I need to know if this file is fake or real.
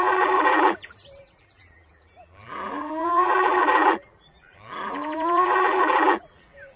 fake